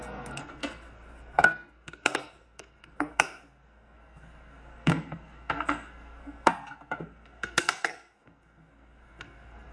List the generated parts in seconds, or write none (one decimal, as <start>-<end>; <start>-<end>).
0.0-9.7